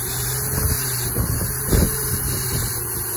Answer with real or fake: real